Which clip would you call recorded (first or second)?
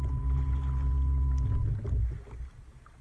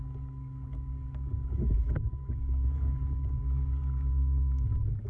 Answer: first